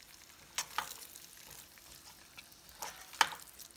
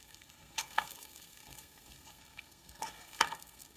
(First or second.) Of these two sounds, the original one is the first